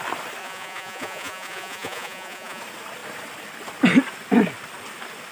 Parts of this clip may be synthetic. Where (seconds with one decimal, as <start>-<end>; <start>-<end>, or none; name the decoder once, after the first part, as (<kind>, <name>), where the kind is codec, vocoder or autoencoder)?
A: 0.4-2.6 (vocoder, Vocos)